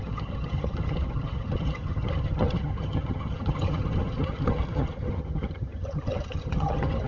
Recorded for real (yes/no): no